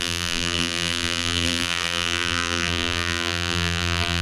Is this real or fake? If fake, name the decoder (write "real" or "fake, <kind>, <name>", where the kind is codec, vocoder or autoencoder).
fake, vocoder, BigVGAN v2